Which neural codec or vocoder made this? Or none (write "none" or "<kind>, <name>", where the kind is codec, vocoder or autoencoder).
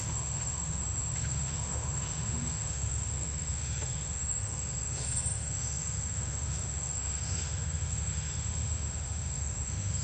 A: autoencoder, DAC-VAE